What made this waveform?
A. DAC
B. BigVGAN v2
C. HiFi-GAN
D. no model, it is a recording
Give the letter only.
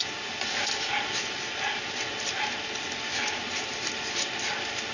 D